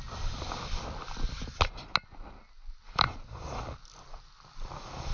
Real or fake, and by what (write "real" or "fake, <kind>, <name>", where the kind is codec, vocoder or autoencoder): real